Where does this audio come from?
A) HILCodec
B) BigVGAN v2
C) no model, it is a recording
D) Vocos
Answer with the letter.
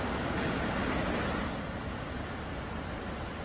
C